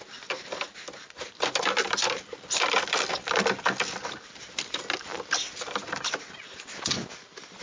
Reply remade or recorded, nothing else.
recorded